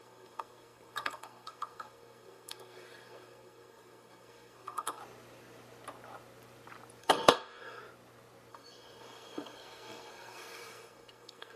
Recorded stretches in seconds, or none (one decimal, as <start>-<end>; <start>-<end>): 5.0-7.0; 7.8-8.5